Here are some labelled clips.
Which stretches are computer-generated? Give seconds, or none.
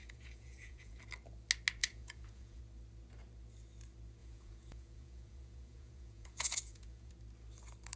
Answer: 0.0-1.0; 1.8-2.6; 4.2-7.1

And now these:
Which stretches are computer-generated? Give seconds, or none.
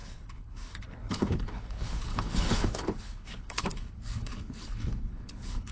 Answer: 0.0-5.7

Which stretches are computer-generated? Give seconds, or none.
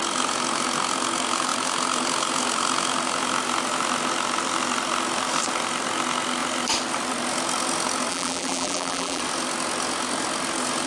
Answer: 8.1-9.2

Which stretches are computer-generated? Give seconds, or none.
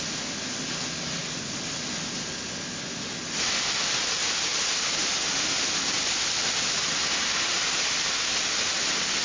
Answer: none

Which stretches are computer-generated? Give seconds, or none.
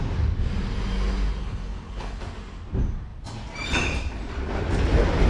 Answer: 1.4-2.2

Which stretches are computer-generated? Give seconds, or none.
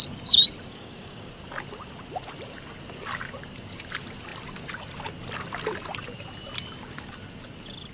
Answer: 0.7-1.3